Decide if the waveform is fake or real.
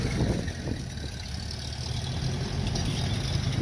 real